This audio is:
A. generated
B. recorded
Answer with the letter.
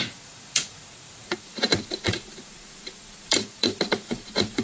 A